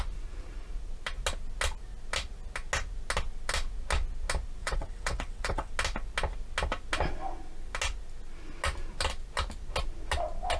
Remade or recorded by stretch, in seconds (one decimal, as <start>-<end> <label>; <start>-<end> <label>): 0.0-4.6 recorded; 4.6-5.7 remade; 5.7-10.6 recorded